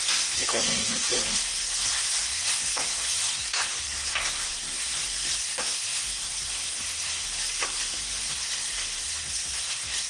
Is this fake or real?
fake